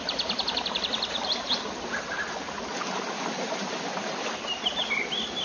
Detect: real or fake real